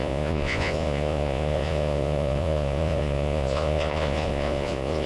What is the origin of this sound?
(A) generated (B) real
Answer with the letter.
A